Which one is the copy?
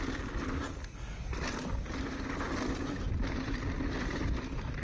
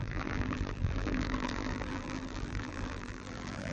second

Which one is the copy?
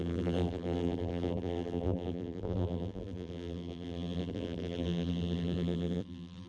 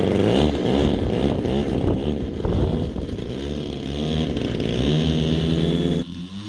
first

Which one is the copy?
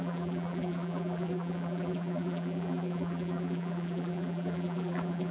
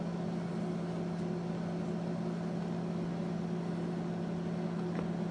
first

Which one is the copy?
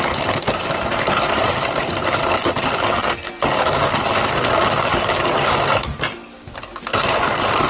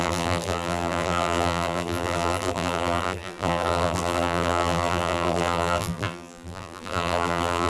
second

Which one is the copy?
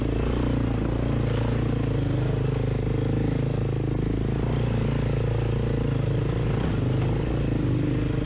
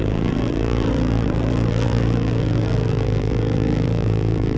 second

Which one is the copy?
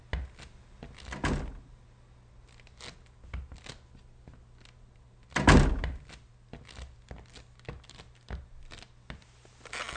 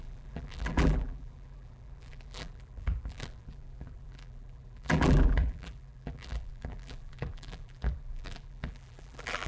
second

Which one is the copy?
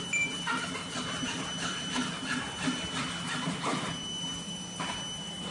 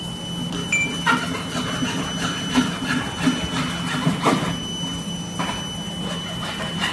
first